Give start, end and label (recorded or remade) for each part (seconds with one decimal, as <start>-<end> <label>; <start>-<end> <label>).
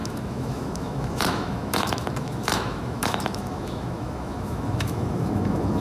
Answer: 0.0-5.8 remade